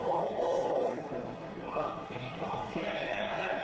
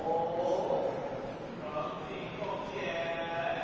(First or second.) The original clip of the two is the second